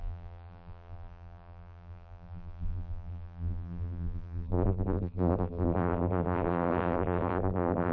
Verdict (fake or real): fake